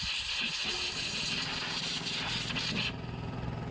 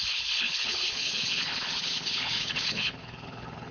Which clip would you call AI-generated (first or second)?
second